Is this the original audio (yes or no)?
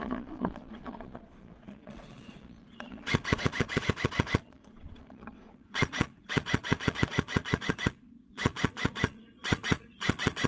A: no